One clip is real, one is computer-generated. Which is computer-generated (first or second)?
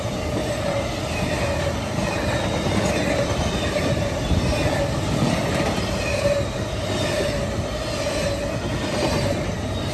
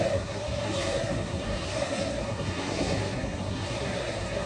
second